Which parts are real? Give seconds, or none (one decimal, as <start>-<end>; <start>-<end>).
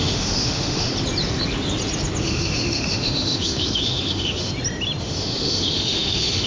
0.9-2.2; 4.5-5.0